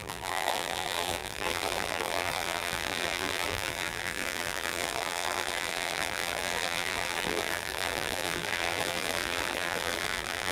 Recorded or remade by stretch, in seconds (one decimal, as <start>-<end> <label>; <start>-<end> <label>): 0.0-10.5 remade